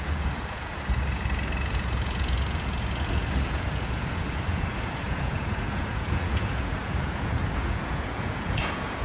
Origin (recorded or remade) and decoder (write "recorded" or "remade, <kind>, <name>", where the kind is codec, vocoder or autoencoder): remade, vocoder, Vocos